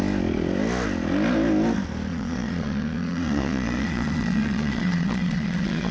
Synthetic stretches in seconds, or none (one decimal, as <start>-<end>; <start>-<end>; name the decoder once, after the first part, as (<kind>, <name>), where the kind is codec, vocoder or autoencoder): 2.1-5.9 (vocoder, Vocos)